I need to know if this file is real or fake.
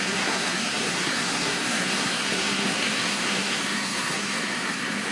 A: fake